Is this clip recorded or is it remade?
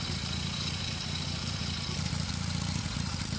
remade